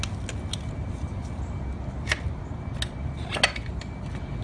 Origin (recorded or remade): recorded